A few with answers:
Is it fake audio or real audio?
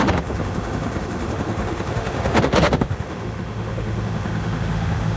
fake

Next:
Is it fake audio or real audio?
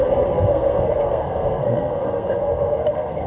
fake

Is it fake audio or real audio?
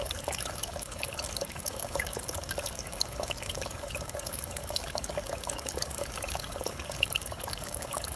fake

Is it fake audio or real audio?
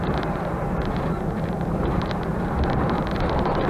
fake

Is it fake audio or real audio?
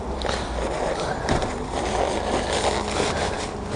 real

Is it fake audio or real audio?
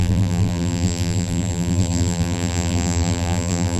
fake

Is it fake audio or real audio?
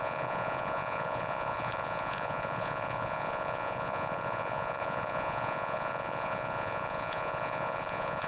fake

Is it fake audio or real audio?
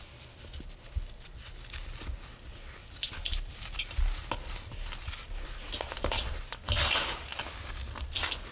real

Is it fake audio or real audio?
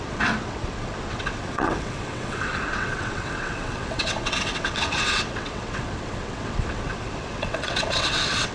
fake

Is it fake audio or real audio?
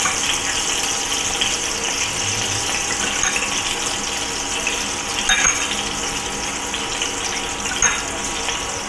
real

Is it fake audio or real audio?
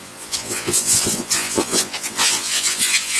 fake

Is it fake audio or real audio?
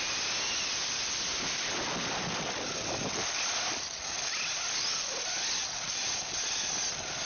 real